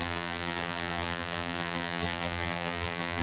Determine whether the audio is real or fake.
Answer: fake